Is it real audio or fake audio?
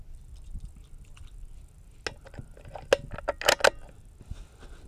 real